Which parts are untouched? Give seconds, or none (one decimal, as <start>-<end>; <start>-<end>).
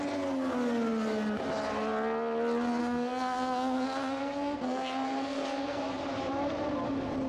0.0-2.8; 5.8-7.3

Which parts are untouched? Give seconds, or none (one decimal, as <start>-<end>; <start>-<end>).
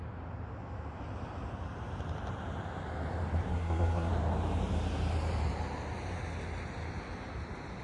0.0-3.5; 4.1-7.8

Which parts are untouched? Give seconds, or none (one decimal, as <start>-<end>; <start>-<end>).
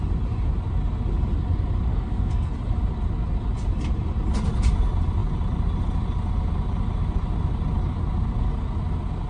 0.0-1.9; 2.5-9.3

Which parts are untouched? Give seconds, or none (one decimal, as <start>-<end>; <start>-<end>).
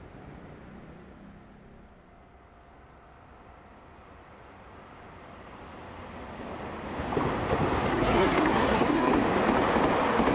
0.0-7.9; 9.1-10.3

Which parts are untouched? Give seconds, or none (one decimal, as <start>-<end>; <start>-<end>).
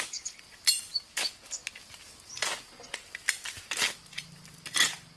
0.0-5.2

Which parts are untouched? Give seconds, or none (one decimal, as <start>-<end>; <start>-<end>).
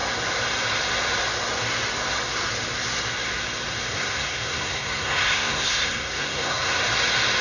0.0-3.9; 6.8-7.4